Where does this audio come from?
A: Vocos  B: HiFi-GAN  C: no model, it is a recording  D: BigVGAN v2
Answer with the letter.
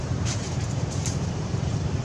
D